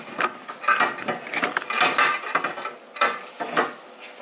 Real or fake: real